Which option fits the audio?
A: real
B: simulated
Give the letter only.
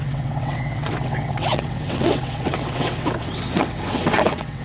B